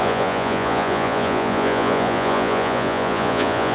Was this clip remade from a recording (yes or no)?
yes